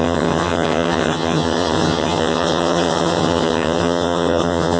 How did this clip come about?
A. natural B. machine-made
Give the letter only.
B